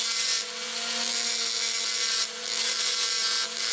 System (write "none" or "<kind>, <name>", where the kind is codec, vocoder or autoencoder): none